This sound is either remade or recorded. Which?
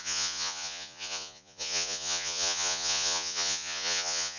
remade